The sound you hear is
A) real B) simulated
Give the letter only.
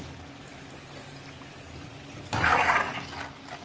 A